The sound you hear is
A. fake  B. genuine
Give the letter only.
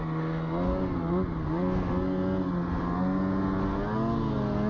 B